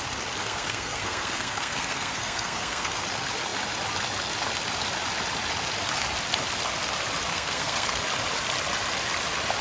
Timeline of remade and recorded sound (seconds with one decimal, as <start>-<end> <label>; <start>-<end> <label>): 0.0-0.4 recorded; 0.4-3.0 remade; 3.0-7.3 recorded; 7.3-8.0 remade; 8.0-9.6 recorded